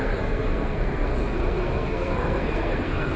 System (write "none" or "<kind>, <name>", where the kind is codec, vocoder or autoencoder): codec, SNAC